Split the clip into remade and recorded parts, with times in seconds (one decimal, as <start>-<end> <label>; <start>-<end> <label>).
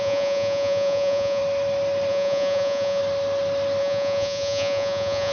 0.0-1.4 remade; 1.4-2.1 recorded; 2.1-3.0 remade; 3.0-3.8 recorded; 3.8-5.3 remade